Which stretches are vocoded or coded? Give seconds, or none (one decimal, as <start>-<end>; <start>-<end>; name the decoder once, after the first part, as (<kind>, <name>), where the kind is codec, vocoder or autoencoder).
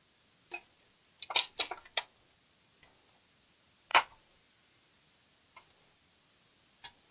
3.9-4.9 (vocoder, BigVGAN v2)